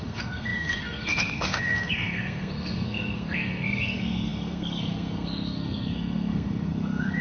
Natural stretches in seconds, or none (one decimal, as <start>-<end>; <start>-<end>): none